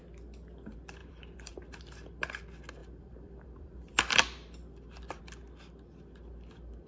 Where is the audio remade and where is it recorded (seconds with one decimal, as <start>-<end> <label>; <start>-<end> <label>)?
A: 0.0-1.0 recorded; 1.0-1.5 remade; 1.5-2.8 recorded; 2.8-5.2 remade; 5.2-6.9 recorded